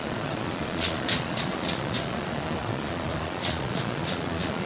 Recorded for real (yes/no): no